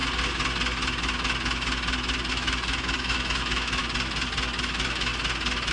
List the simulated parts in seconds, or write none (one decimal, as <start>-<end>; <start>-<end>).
2.3-3.8; 4.6-5.1